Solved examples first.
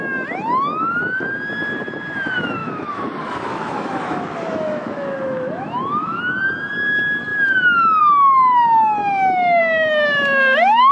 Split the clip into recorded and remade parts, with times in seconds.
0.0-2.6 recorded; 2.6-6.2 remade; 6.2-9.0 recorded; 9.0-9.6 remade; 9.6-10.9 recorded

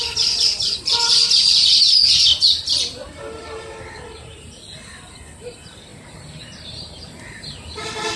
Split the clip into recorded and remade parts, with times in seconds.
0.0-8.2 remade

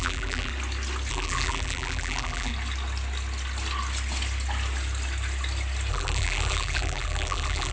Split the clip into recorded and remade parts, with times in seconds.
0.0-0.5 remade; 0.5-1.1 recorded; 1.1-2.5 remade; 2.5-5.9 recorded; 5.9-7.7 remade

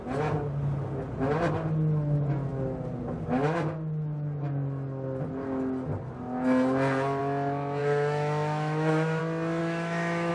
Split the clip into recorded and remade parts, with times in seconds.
0.0-7.8 recorded; 7.8-9.2 remade; 9.2-9.6 recorded; 9.6-10.3 remade